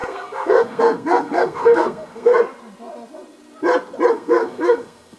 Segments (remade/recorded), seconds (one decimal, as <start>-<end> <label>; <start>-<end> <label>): 0.0-2.3 remade; 2.3-4.1 recorded; 4.1-5.2 remade